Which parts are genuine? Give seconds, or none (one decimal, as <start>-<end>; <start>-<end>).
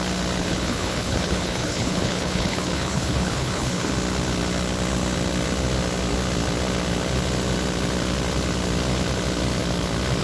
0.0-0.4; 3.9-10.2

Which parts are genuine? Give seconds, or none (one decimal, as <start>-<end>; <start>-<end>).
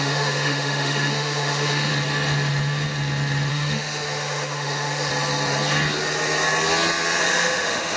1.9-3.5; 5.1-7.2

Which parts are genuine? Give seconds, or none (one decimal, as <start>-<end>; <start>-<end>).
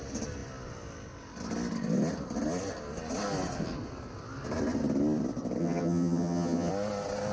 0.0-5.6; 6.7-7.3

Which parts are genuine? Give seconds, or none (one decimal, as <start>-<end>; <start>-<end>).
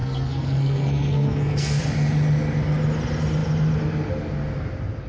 1.8-5.1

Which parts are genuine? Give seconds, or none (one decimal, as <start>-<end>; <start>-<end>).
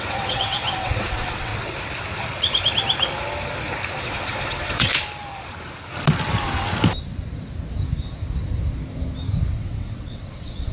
1.5-4.0; 4.9-9.5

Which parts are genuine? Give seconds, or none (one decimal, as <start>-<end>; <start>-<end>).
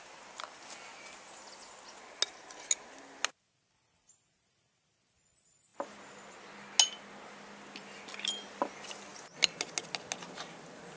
0.0-11.0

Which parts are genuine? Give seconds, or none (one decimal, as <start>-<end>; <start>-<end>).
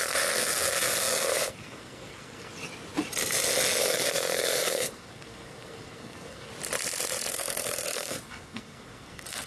2.5-3.8; 6.5-7.3